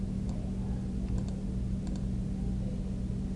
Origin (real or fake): real